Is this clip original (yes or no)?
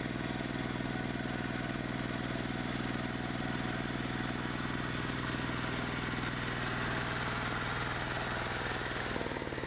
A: yes